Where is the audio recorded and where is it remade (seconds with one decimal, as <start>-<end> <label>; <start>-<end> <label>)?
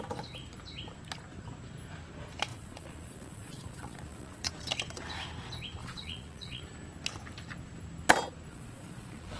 0.0-2.5 recorded; 2.5-4.5 remade; 4.5-5.8 recorded; 5.8-6.6 remade; 6.6-8.5 recorded; 8.5-9.4 remade